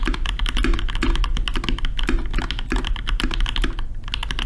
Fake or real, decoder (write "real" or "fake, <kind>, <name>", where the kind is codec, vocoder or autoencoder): real